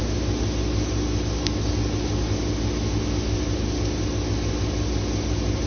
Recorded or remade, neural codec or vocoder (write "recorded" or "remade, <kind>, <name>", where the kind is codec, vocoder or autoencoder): recorded